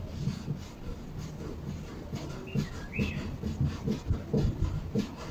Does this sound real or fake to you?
real